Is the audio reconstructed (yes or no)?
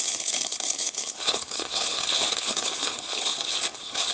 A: yes